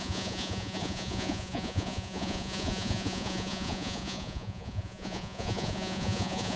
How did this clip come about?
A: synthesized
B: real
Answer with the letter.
A